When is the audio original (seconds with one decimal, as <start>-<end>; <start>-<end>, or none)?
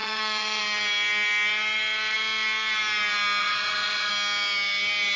0.6-3.4; 4.1-5.2